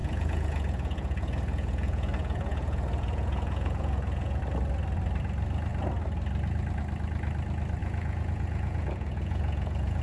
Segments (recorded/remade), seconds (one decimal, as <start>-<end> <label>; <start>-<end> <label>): 0.0-4.4 remade; 4.4-7.8 recorded; 7.8-10.0 remade